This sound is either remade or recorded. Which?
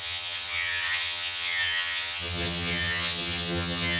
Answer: remade